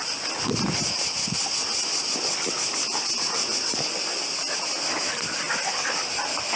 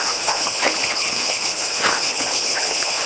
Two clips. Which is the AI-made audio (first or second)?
second